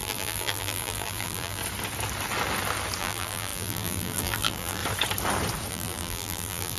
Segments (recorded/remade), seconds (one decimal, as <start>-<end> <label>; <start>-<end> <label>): 0.0-1.6 remade; 1.6-3.0 recorded; 3.0-4.8 remade; 4.8-5.7 recorded; 5.7-6.8 remade